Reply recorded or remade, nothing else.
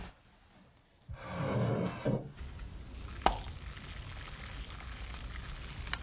recorded